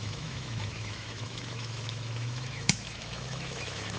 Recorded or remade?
remade